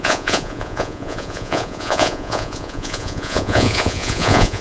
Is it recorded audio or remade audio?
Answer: remade